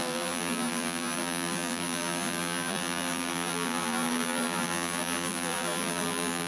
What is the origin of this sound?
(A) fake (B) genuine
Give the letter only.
A